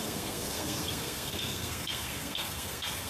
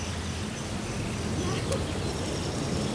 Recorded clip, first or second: second